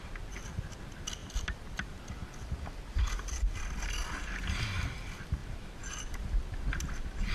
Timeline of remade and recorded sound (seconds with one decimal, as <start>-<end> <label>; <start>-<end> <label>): 0.0-7.3 recorded